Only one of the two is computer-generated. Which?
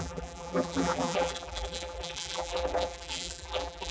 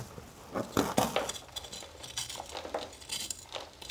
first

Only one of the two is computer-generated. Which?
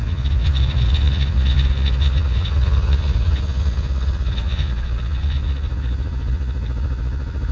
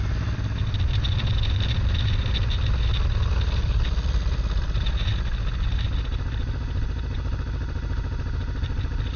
first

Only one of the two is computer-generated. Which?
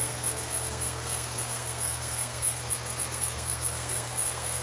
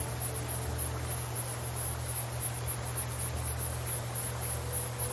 first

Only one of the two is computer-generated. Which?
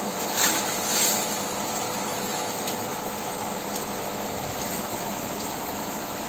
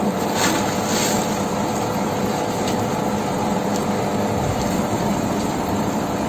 first